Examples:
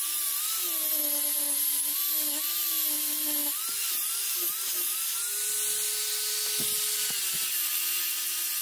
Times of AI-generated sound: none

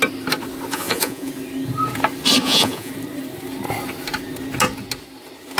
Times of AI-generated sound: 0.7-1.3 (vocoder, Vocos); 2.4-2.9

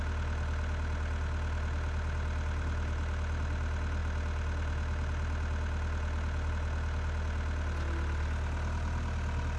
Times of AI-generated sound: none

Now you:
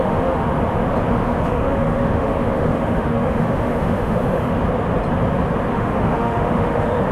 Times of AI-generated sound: 0.0-0.5 (autoencoder, DAC-VAE); 1.1-4.6; 5.7-7.1

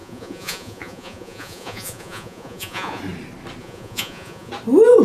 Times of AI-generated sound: 0.0-3.0 (vocoder, Vocos); 3.6-4.5